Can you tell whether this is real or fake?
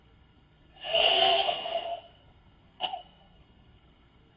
fake